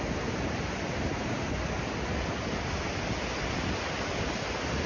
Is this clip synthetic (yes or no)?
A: no